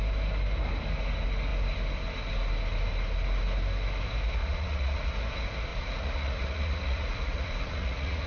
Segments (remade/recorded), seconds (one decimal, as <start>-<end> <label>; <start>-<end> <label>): 0.0-4.4 recorded; 4.4-5.1 remade; 5.1-5.7 recorded; 5.7-8.3 remade

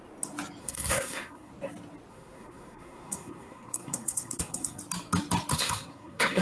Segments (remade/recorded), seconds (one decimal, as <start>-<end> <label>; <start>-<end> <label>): 0.0-0.6 recorded; 0.6-1.5 remade; 1.5-2.1 recorded; 2.1-4.8 remade; 4.8-5.5 recorded; 5.5-6.4 remade

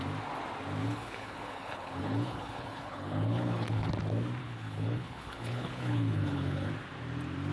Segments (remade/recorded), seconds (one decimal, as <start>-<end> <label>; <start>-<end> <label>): 0.0-0.8 recorded; 0.8-3.9 remade; 3.9-4.4 recorded; 4.4-6.7 remade; 6.7-7.5 recorded

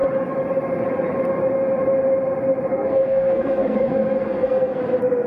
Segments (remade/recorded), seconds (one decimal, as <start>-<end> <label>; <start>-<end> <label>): 0.0-2.7 recorded; 2.7-4.8 remade; 4.8-5.3 recorded